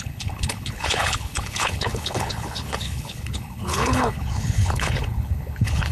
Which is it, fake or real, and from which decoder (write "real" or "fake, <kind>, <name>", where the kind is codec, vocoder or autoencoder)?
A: fake, codec, HILCodec